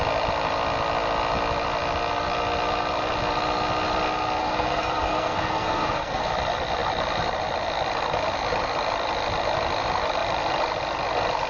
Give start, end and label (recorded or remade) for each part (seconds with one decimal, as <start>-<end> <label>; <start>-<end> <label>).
0.0-4.4 recorded; 4.4-6.3 remade; 6.3-11.5 recorded